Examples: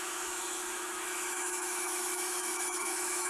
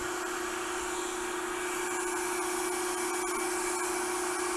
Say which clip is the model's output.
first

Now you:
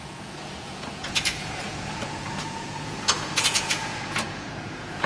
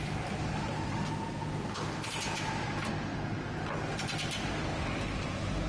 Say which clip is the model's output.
first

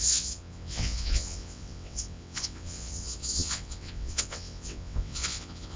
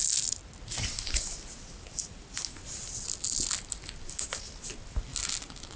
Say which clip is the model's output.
first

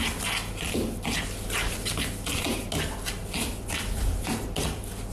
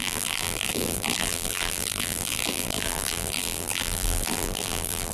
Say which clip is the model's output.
second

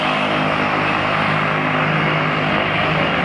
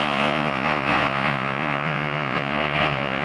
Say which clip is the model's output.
second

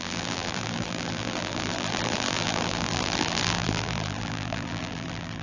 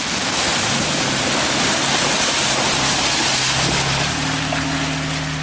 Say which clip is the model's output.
first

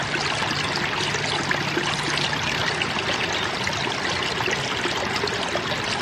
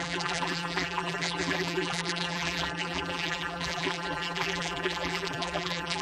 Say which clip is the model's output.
second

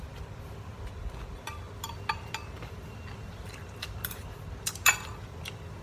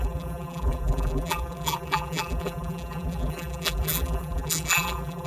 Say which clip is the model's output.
second